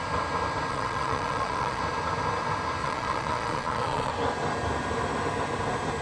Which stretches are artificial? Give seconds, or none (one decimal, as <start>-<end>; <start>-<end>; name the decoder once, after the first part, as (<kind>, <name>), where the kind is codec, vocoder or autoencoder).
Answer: 0.7-1.8 (vocoder, Vocos); 2.8-4.1

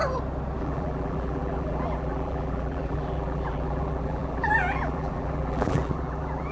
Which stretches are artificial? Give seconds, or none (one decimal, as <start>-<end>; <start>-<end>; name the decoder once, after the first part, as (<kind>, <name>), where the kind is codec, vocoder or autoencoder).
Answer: 0.6-6.5 (vocoder, BigVGAN v2)

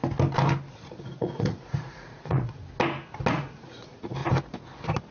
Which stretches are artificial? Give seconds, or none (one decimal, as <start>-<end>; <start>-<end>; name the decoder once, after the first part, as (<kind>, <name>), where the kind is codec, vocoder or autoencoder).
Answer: 0.7-2.6 (vocoder, Vocos); 3.3-4.2